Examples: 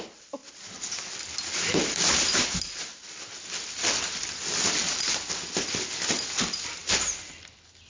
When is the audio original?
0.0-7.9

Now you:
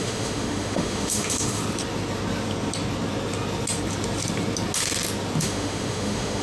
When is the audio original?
1.6-5.4

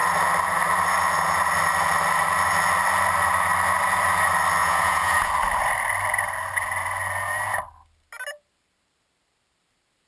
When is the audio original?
0.0-4.6; 5.3-10.1

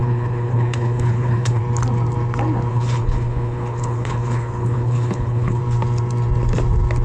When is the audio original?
1.6-2.7; 5.6-7.0

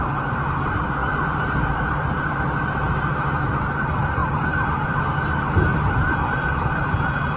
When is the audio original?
0.0-1.0; 1.8-4.2; 5.0-7.4

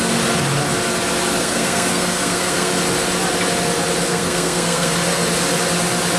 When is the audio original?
0.0-1.4; 2.7-4.1; 4.9-6.2

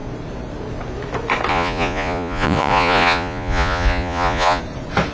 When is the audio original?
0.0-1.5; 4.6-5.1

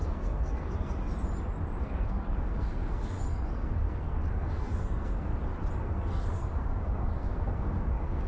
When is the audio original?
1.0-1.8; 5.3-5.8